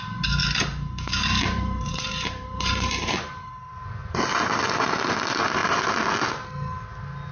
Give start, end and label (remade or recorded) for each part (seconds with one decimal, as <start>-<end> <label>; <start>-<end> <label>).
0.0-0.4 recorded; 0.4-4.2 remade; 4.2-7.3 recorded